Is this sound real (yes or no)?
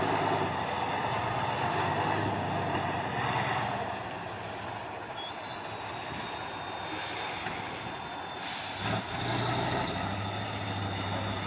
yes